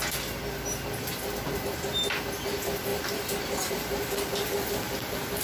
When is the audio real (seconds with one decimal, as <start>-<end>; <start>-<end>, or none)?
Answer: 0.0-2.9; 4.7-5.4